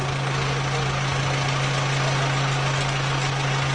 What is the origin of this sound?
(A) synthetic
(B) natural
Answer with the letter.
B